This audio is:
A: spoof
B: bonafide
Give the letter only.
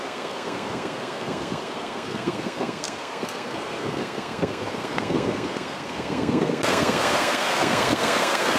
A